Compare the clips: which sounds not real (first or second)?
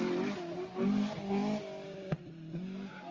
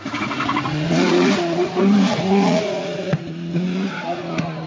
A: second